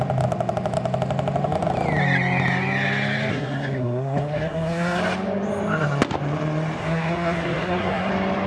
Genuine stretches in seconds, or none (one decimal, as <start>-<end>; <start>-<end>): 0.0-3.3; 5.0-6.8; 8.1-8.5